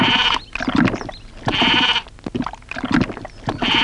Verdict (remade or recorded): recorded